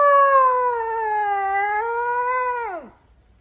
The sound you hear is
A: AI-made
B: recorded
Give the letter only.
B